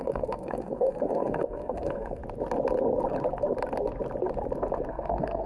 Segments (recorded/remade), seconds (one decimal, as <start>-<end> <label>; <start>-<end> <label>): 0.0-2.2 remade; 2.2-4.9 recorded; 4.9-5.5 remade